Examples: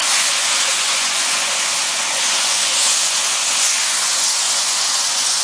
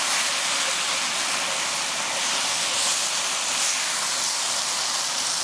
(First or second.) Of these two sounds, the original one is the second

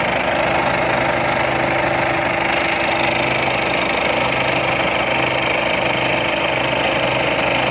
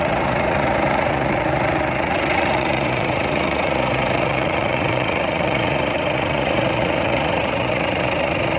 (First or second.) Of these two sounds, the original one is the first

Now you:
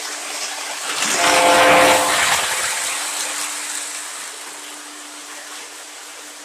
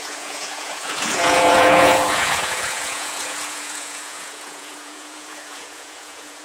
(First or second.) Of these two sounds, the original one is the first